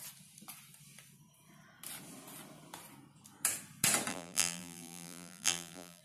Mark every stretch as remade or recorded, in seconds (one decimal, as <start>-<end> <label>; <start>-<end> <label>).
0.0-4.1 recorded; 4.1-6.0 remade